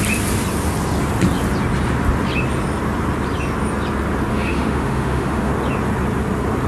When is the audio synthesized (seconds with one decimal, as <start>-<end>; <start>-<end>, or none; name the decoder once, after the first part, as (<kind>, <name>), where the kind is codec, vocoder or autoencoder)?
4.3-5.5 (autoencoder, DAC-VAE)